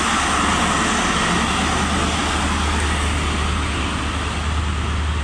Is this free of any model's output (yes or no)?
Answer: yes